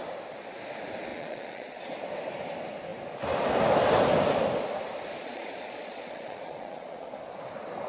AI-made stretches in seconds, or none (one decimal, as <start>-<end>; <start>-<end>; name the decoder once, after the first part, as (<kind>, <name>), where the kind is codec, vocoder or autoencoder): 1.1-1.8 (vocoder, Vocos); 5.2-7.1